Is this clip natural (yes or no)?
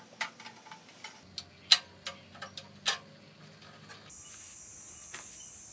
yes